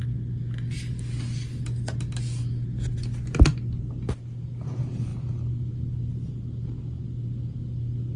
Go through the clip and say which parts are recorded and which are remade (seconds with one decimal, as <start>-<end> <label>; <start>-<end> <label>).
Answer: 0.0-8.2 recorded